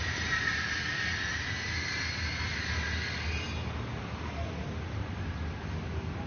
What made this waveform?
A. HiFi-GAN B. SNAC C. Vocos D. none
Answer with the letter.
D